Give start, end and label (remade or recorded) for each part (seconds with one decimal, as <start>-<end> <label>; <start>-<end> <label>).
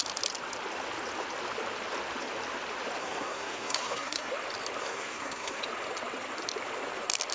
0.0-3.0 recorded; 3.0-4.3 remade; 4.3-4.8 recorded; 4.8-5.6 remade; 5.6-7.3 recorded